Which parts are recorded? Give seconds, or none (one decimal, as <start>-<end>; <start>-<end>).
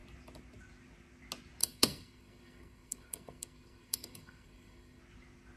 0.0-1.6; 5.0-5.6